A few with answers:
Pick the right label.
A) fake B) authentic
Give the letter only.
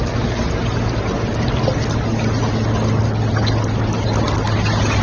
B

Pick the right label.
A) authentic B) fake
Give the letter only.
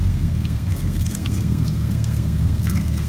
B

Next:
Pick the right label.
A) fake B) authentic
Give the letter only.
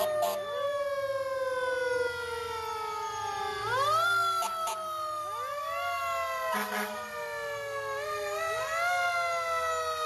B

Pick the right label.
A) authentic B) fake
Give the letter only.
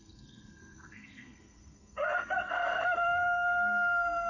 B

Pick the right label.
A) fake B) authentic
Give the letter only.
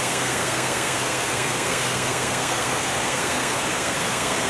A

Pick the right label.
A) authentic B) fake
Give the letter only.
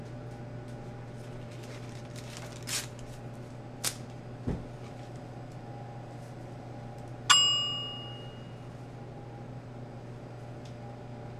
A